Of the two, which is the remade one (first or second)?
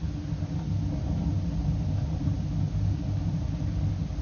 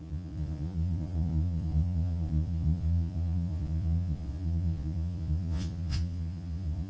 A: second